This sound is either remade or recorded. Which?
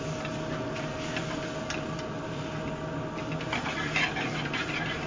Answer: recorded